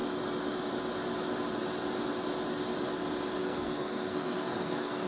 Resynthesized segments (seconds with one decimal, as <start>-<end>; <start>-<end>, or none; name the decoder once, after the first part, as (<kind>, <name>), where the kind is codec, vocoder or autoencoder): 3.4-5.1 (codec, SNAC)